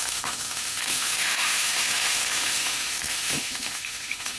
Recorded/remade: remade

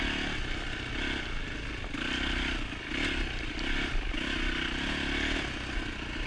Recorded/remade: recorded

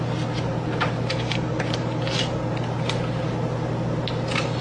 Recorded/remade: recorded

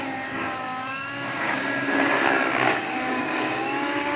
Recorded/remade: remade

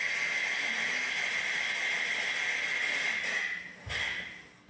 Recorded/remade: recorded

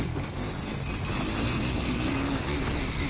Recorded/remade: recorded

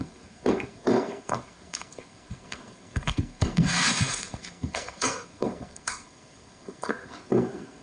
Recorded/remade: remade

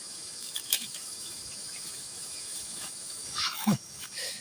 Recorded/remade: remade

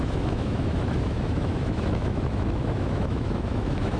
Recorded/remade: remade